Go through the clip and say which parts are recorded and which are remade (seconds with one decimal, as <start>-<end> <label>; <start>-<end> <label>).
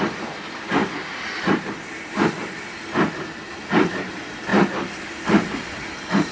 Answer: 0.0-0.8 remade; 0.8-2.1 recorded; 2.1-6.3 remade